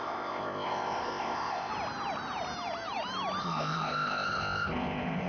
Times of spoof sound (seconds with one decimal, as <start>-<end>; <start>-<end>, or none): 0.0-1.7; 3.4-5.3